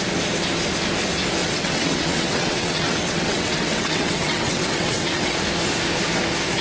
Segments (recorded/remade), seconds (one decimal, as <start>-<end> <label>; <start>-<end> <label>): 0.0-1.4 recorded; 1.4-5.4 remade; 5.4-6.6 recorded